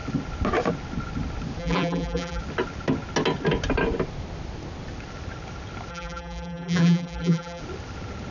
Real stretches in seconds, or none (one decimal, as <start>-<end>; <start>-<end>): 0.0-1.6; 2.4-5.9; 7.6-8.3